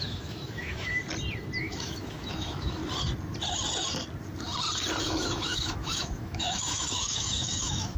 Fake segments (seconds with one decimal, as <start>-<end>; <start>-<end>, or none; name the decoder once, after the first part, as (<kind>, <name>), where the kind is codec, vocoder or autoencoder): 0.0-1.0 (autoencoder, DAC-VAE); 1.6-2.8; 5.0-8.0